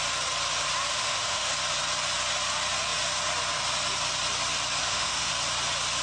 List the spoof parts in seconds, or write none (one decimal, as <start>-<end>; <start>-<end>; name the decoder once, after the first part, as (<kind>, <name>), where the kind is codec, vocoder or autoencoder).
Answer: 0.9-1.5 (autoencoder, DAC-VAE); 4.8-5.3

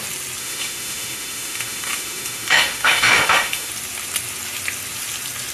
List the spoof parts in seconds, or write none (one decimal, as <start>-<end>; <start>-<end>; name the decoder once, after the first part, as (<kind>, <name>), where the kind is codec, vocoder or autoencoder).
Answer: 0.4-3.7 (autoencoder, DAC-VAE)